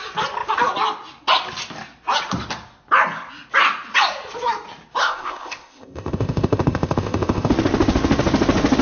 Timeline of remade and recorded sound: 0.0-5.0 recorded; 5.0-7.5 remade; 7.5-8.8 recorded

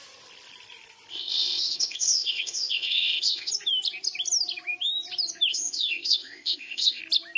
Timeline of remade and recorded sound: 0.0-1.1 recorded; 1.1-3.5 remade; 3.5-5.5 recorded; 5.5-7.0 remade; 7.0-7.4 recorded

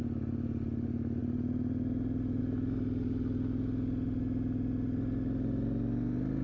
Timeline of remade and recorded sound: 0.0-6.4 recorded

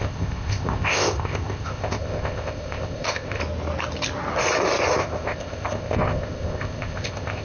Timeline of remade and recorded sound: 0.0-3.4 remade; 3.4-5.0 recorded; 5.0-7.4 remade

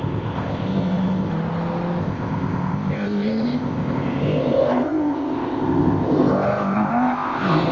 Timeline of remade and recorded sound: 0.0-1.3 remade; 1.3-2.0 recorded; 2.0-7.7 remade

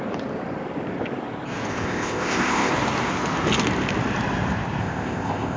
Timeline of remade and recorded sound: 0.0-1.7 recorded; 1.7-2.7 remade; 2.7-4.8 recorded; 4.8-5.6 remade

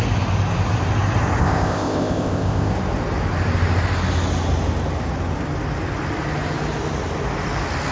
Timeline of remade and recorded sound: 0.0-1.4 recorded; 1.4-2.7 remade; 2.7-7.9 recorded

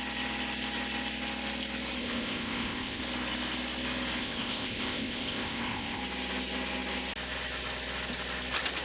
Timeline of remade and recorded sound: 0.0-2.0 recorded; 2.0-3.0 remade; 3.0-4.2 recorded; 4.2-6.0 remade; 6.0-8.8 recorded